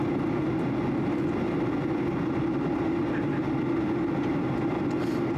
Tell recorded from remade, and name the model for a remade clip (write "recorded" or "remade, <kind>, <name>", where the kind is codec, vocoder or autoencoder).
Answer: recorded